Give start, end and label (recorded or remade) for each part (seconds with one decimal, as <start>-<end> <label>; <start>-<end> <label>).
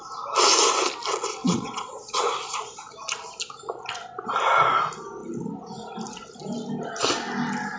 0.0-1.4 recorded; 1.4-2.3 remade; 2.3-7.8 recorded